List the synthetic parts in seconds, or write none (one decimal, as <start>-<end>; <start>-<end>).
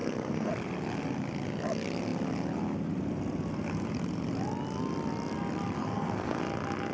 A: 0.0-0.5; 5.8-6.4